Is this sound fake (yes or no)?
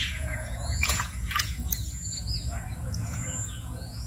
yes